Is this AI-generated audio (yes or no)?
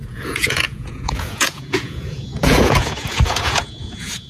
yes